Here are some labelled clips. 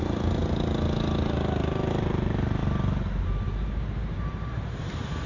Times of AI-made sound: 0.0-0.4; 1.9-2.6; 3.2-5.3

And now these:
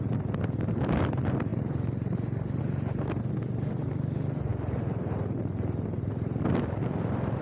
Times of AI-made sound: 4.5-6.6

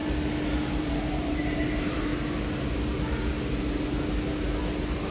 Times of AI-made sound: 0.8-2.1